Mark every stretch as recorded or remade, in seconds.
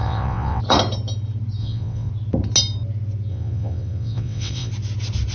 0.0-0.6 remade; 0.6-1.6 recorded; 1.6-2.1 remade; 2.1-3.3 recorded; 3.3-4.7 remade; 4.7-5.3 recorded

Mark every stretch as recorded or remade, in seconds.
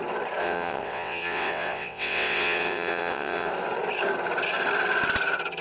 0.0-0.4 recorded; 0.4-3.5 remade; 3.5-5.6 recorded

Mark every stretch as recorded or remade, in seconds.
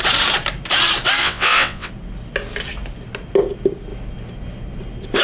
0.0-1.2 recorded; 1.2-1.9 remade; 1.9-5.2 recorded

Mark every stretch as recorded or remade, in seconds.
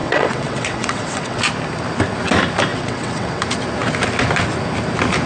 0.0-1.4 remade; 1.4-2.7 recorded; 2.7-3.4 remade; 3.4-5.3 recorded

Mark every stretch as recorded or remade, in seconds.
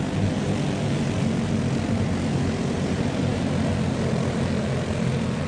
0.0-5.5 recorded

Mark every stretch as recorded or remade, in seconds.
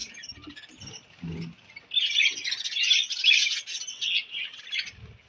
0.0-3.9 recorded; 3.9-4.6 remade; 4.6-5.3 recorded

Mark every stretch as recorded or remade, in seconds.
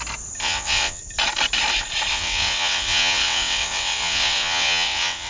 0.0-0.4 recorded; 0.4-1.0 remade; 1.0-2.1 recorded; 2.1-5.3 remade